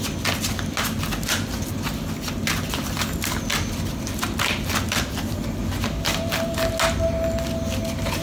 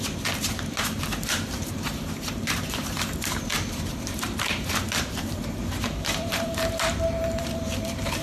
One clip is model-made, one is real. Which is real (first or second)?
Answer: first